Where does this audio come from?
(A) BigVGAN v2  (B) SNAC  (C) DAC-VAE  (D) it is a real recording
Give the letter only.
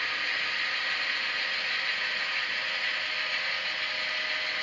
D